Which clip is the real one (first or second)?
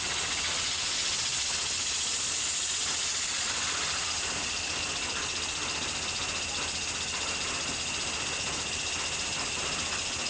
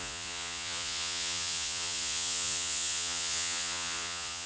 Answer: first